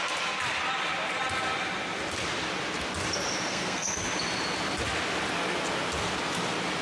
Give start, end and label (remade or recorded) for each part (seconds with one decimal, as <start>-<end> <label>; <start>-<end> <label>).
0.0-3.5 recorded; 3.5-4.0 remade; 4.0-6.8 recorded